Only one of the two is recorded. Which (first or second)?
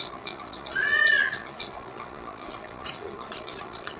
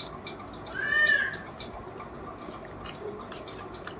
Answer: second